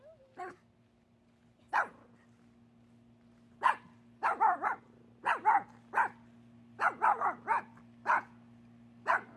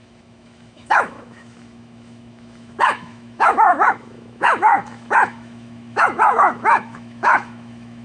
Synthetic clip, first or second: second